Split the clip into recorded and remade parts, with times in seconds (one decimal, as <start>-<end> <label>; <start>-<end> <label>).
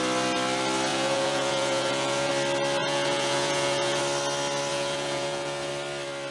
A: 0.0-0.9 recorded; 0.9-2.3 remade; 2.3-2.8 recorded; 2.8-4.0 remade; 4.0-4.7 recorded; 4.7-5.7 remade; 5.7-6.3 recorded